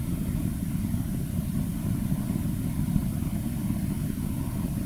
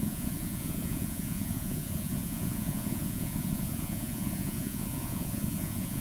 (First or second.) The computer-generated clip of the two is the second